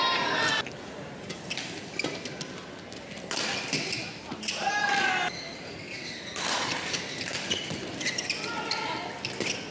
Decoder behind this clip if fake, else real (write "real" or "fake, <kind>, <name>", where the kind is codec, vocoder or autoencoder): real